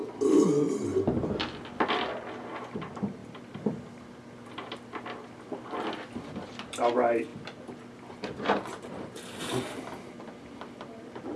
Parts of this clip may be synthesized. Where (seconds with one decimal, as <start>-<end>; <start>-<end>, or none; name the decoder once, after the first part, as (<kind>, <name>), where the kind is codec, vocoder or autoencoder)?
3.2-6.5 (vocoder, BigVGAN v2); 7.3-11.4

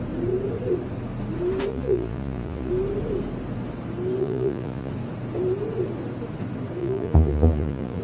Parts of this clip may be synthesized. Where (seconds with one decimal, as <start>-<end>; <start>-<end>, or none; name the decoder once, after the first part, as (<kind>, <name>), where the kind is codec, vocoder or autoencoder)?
1.7-2.7 (vocoder, Vocos); 4.2-4.9; 6.8-8.0

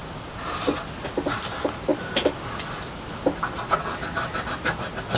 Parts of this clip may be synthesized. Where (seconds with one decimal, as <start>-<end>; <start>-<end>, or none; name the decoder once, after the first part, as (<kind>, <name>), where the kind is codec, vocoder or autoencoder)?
none

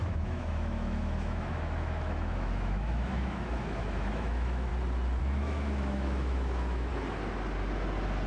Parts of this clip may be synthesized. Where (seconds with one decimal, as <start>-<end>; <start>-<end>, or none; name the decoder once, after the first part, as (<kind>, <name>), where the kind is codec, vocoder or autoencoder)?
0.0-4.7 (autoencoder, DAC-VAE); 5.2-6.9

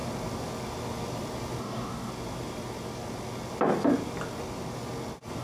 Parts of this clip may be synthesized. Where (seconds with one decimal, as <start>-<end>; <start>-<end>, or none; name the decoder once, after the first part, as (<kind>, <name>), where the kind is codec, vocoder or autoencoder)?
1.6-2.1 (codec, DAC)